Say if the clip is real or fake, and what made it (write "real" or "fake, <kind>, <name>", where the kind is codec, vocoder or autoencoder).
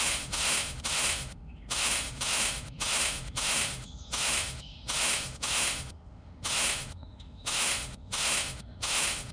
fake, autoencoder, DAC-VAE